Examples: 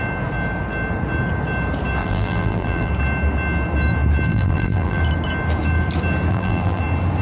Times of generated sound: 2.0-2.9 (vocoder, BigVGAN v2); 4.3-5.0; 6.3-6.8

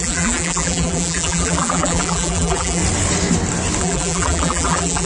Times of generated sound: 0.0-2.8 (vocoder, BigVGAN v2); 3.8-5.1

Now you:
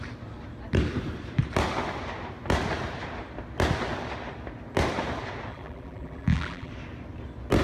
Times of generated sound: 5.5-6.7 (vocoder, BigVGAN v2)

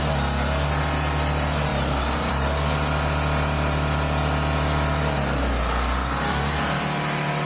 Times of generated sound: 1.7-2.3 (vocoder, BigVGAN v2)

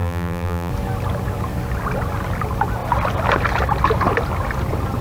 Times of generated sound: 0.0-0.7 (vocoder, BigVGAN v2)